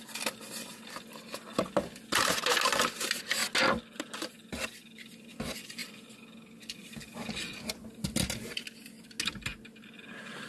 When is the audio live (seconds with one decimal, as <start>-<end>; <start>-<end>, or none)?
0.0-10.5